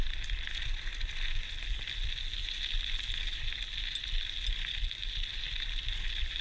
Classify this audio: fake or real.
real